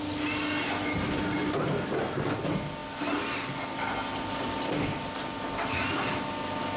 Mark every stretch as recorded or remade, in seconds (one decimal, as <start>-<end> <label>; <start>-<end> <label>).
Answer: 0.0-6.8 recorded

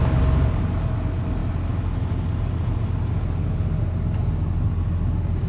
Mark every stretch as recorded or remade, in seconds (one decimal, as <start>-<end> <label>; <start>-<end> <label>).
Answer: 0.0-5.5 recorded

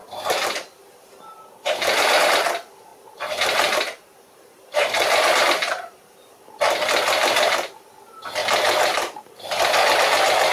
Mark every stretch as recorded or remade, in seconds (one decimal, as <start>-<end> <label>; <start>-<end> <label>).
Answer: 0.0-0.7 remade; 0.7-2.9 recorded; 2.9-6.4 remade; 6.4-10.5 recorded

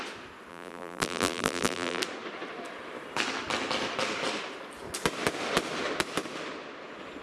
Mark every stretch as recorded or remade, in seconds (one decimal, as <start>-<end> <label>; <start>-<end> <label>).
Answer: 0.0-0.5 recorded; 0.5-2.0 remade; 2.0-7.2 recorded

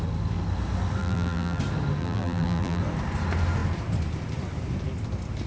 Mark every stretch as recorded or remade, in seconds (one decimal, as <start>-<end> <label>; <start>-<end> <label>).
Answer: 0.0-1.0 recorded; 1.0-1.6 remade; 1.6-2.0 recorded; 2.0-2.8 remade; 2.8-5.5 recorded

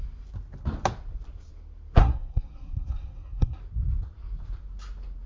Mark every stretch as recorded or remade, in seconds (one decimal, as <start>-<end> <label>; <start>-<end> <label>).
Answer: 0.0-2.0 recorded; 2.0-3.6 remade; 3.6-5.3 recorded

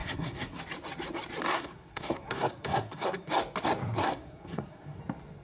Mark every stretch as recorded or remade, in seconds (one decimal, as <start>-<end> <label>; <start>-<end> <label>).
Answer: 0.0-0.6 remade; 0.6-1.5 recorded; 1.5-3.3 remade; 3.3-4.0 recorded; 4.0-5.0 remade; 5.0-5.4 recorded